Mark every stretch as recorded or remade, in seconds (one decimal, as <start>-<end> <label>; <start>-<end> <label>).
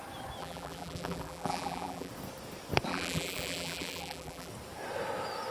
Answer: 0.0-0.4 recorded; 0.4-2.1 remade; 2.1-2.9 recorded; 2.9-4.5 remade; 4.5-5.5 recorded